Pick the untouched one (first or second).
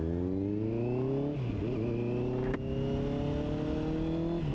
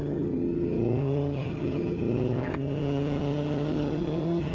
first